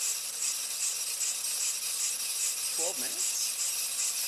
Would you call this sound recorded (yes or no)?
yes